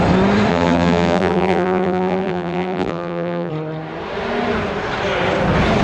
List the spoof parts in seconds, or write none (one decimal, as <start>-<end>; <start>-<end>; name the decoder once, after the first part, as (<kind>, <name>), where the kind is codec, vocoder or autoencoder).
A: 0.5-3.5 (vocoder, BigVGAN v2)